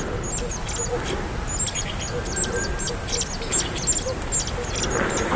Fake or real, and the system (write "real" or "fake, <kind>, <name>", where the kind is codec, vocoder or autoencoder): real